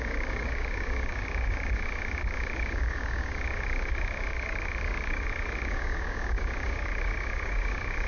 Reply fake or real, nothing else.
fake